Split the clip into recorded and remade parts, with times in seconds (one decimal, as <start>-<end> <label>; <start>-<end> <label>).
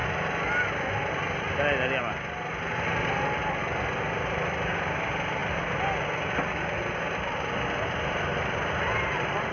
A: 0.0-9.5 recorded